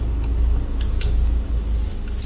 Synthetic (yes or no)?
no